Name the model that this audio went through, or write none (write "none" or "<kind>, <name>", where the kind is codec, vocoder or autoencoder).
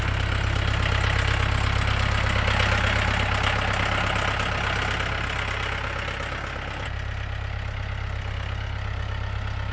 none